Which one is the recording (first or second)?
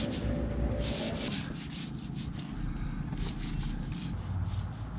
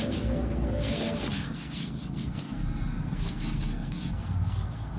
first